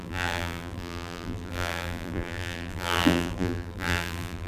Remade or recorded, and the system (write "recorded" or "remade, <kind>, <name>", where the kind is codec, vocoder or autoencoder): remade, vocoder, BigVGAN v2